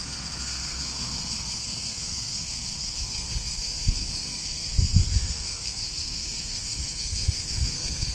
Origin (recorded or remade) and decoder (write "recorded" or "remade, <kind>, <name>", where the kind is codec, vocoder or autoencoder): remade, codec, SNAC